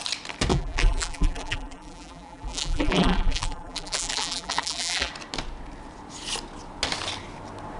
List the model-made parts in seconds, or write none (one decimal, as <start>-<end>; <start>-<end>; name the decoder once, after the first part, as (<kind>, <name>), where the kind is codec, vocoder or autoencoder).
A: 0.5-5.1 (vocoder, BigVGAN v2)